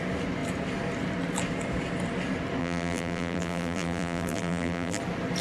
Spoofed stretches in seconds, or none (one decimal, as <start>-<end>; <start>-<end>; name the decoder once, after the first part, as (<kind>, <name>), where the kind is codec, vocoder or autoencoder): 2.6-5.0 (vocoder, BigVGAN v2)